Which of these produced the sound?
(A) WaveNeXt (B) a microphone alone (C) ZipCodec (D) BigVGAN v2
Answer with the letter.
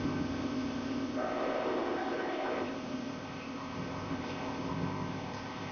C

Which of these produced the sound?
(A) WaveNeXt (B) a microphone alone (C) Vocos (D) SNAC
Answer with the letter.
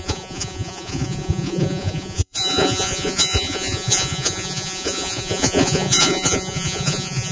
C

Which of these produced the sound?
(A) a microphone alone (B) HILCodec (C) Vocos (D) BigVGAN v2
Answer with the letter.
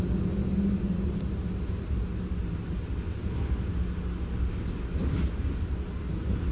A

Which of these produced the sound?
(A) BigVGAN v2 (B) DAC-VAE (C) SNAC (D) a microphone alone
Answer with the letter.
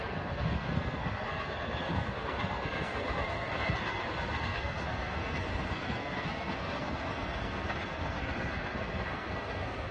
C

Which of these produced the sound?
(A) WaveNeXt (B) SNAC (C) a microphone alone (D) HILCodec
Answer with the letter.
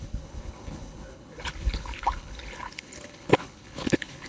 D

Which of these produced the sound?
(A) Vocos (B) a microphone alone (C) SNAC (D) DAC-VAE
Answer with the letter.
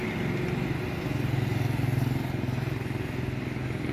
B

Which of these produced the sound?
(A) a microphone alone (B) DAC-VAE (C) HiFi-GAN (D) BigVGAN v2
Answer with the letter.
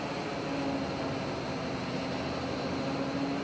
A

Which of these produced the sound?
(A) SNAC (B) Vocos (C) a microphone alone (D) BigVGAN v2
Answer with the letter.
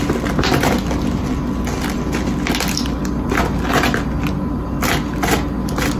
C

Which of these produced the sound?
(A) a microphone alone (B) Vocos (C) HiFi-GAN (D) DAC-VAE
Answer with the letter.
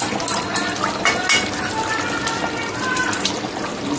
A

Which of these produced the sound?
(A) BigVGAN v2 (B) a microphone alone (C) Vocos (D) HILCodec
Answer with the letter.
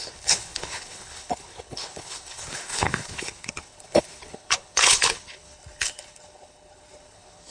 D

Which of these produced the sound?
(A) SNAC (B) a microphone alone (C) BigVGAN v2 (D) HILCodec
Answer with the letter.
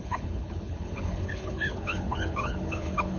D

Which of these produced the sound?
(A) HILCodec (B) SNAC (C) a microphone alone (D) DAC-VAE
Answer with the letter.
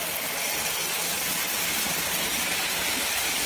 C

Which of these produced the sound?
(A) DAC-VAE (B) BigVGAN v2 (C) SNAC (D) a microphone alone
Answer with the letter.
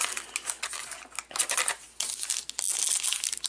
D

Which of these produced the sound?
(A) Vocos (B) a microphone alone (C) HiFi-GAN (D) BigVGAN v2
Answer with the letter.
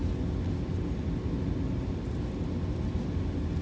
B